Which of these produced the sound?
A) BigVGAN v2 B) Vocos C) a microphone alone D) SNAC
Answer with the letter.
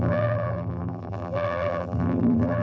A